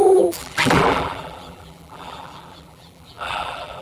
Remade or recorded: remade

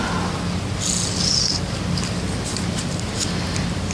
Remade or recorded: recorded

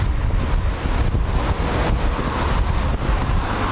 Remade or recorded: recorded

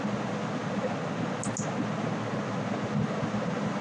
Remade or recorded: recorded